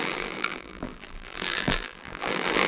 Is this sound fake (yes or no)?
yes